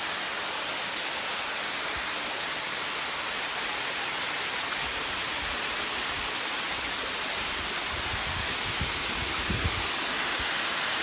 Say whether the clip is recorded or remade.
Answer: recorded